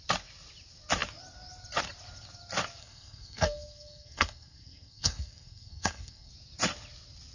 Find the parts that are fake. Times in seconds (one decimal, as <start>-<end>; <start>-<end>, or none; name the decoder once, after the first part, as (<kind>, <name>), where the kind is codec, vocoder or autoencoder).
2.8-6.3 (codec, SNAC)